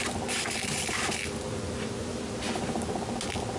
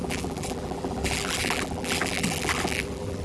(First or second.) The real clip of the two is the first